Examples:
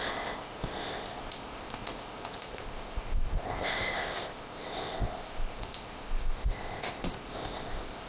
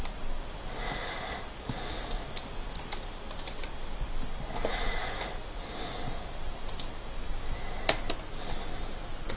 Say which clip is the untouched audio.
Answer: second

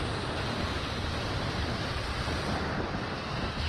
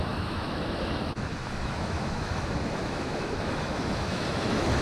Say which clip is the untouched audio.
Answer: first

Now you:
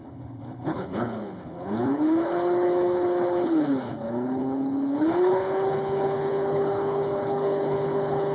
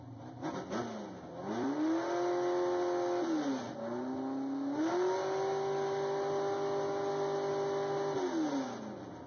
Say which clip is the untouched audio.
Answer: second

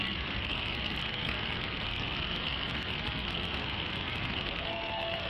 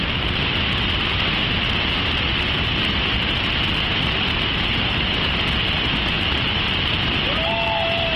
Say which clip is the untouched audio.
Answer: second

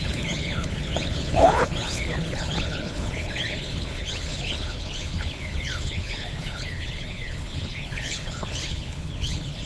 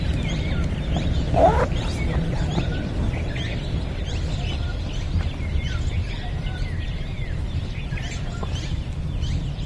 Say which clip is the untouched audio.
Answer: second